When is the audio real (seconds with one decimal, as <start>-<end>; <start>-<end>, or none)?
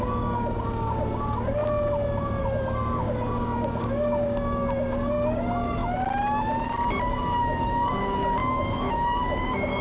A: 1.6-2.4; 5.8-7.1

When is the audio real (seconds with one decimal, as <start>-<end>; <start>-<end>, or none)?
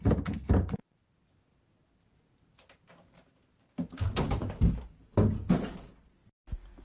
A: 0.0-6.8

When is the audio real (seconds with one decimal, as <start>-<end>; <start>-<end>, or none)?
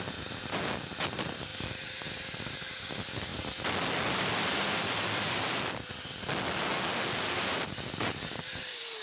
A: 3.3-7.4